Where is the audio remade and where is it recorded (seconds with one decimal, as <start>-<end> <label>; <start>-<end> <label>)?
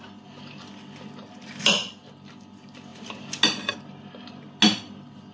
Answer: 0.0-5.3 recorded